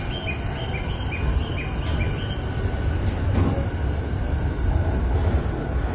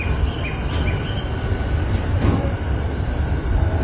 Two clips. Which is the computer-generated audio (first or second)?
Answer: second